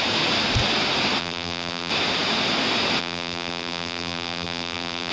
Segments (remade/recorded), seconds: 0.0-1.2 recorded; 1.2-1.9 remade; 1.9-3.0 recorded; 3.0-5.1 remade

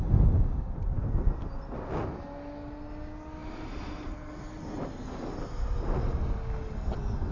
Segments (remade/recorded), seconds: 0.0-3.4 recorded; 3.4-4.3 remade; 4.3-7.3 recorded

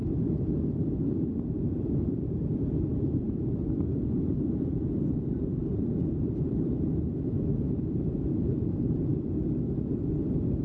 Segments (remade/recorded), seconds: 0.0-1.5 recorded; 1.5-2.5 remade; 2.5-3.9 recorded; 3.9-9.1 remade; 9.1-10.6 recorded

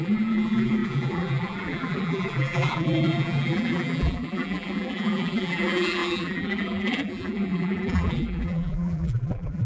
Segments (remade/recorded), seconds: 0.0-9.7 remade

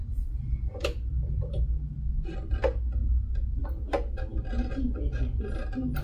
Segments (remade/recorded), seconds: 0.0-1.6 remade; 1.6-3.0 recorded; 3.0-3.6 remade; 3.6-6.0 recorded